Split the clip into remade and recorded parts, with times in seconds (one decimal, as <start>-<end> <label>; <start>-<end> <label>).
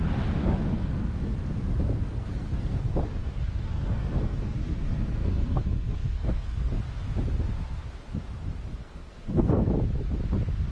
0.0-0.4 recorded; 0.4-1.3 remade; 1.3-2.0 recorded; 2.0-2.8 remade; 2.8-3.2 recorded; 3.2-6.7 remade; 6.7-8.8 recorded; 8.8-9.7 remade; 9.7-10.7 recorded